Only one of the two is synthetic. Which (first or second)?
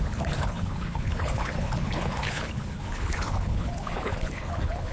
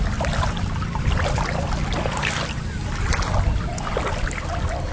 first